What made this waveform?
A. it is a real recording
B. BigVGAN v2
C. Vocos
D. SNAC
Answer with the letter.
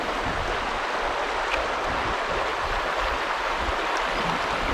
A